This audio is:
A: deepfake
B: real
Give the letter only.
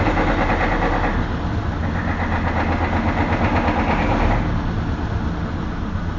B